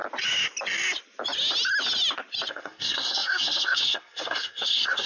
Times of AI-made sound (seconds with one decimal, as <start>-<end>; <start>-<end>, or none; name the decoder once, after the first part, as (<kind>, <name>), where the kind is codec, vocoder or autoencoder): 2.5-5.1 (codec, SNAC)